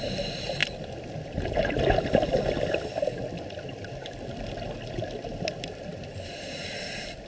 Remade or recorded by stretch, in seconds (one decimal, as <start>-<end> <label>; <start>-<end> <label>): 0.0-7.3 recorded